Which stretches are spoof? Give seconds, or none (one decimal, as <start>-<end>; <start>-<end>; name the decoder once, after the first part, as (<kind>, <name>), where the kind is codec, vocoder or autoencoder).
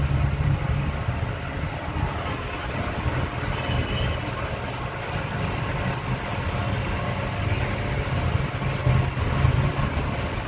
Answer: none